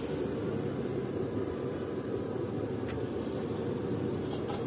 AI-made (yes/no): yes